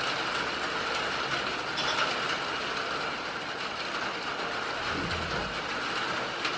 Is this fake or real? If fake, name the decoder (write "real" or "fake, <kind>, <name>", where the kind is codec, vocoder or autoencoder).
real